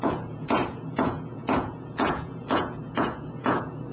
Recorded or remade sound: remade